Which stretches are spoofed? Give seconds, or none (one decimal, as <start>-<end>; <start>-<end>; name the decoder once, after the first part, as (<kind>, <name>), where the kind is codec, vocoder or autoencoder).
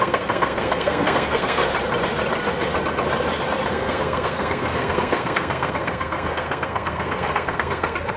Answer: 0.0-1.7 (codec, SNAC); 3.7-8.2